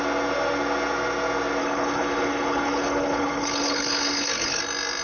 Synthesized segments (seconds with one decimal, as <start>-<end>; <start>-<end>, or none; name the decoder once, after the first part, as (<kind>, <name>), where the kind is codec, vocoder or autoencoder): 1.6-4.6 (codec, HILCodec)